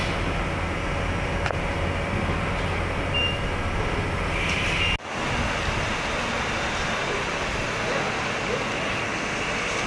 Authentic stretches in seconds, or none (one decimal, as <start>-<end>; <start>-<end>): 0.0-9.9